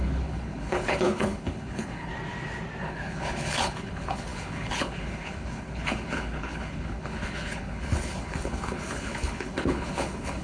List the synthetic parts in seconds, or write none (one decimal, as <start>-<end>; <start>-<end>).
0.0-2.1; 2.8-10.4

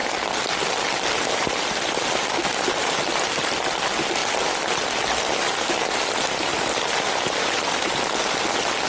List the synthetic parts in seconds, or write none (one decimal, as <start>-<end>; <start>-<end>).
none